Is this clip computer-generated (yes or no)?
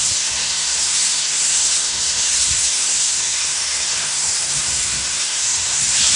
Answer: yes